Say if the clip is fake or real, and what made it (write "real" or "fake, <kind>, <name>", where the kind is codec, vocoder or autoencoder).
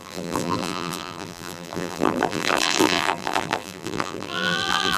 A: fake, vocoder, BigVGAN v2